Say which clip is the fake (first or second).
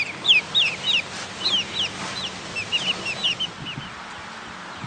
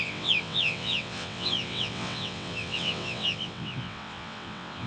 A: second